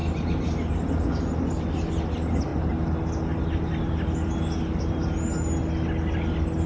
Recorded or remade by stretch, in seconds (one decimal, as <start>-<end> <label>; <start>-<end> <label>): 0.0-6.7 recorded

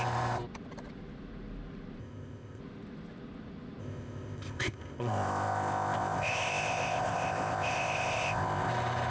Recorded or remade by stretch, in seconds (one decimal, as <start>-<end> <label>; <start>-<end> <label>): 0.0-2.0 recorded; 2.0-2.6 remade; 2.6-3.8 recorded; 3.8-8.7 remade; 8.7-9.1 recorded